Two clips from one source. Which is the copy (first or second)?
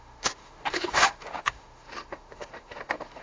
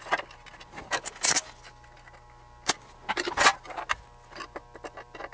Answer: first